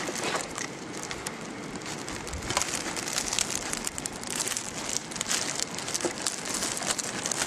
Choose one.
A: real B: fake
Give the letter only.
A